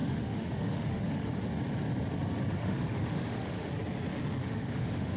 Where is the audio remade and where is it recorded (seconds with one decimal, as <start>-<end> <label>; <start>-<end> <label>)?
0.0-1.3 remade; 1.3-2.6 recorded; 2.6-3.7 remade; 3.7-4.4 recorded; 4.4-5.2 remade